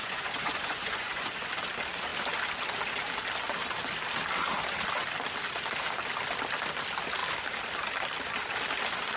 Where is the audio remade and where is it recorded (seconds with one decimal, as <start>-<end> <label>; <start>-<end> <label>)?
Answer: 0.0-1.5 remade; 1.5-9.2 recorded